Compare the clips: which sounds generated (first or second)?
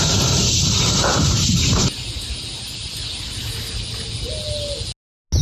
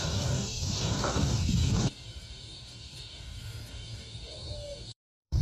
second